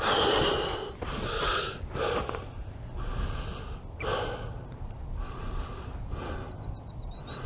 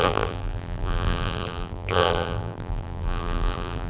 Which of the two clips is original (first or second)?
first